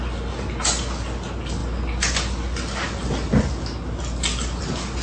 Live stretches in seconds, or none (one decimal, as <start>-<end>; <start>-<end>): 0.0-5.0